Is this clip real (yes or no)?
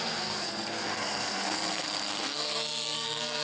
no